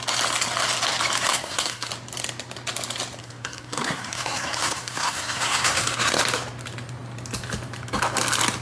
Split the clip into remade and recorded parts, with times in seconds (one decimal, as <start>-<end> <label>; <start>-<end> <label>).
0.0-1.3 recorded; 1.3-1.9 remade; 1.9-3.2 recorded; 3.2-6.2 remade; 6.2-8.6 recorded